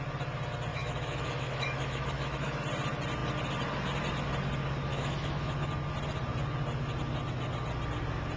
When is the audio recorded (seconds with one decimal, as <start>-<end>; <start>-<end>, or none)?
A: 0.0-0.7; 2.6-4.9; 5.7-8.4